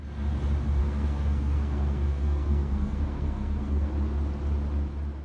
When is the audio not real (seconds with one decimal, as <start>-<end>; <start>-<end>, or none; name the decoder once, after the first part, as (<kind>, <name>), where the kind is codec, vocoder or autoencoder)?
0.8-3.9 (codec, SNAC)